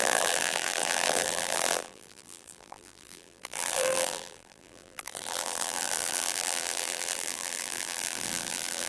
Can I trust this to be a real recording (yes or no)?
no